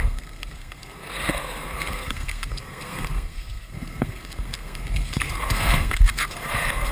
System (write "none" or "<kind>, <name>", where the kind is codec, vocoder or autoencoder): codec, SNAC